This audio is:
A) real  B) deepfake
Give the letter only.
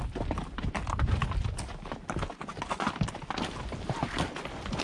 A